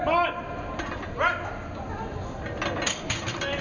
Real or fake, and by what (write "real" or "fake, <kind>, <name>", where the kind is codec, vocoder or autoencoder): real